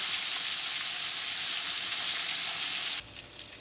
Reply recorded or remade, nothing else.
recorded